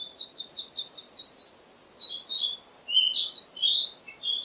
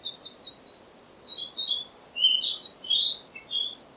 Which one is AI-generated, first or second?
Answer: second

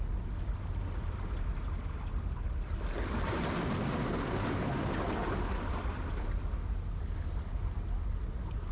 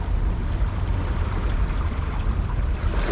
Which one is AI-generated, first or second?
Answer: second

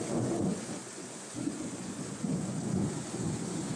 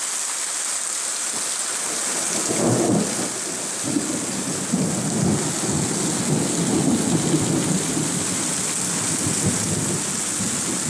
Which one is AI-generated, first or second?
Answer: first